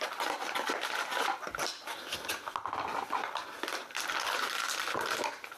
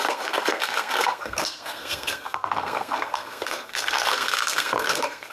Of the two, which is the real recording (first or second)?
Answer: first